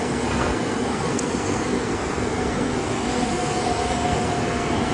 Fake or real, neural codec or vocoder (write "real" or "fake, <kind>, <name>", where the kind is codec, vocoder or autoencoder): fake, codec, SNAC